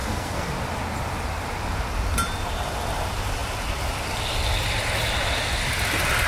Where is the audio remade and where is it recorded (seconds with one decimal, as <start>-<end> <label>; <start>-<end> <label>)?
0.0-0.5 remade; 0.5-6.3 recorded